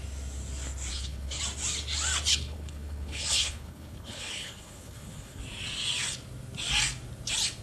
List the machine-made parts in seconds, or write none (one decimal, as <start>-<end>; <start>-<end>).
0.9-1.4; 2.3-5.4